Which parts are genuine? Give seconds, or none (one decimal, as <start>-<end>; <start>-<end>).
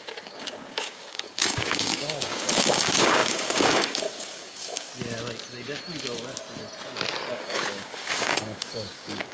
4.9-7.3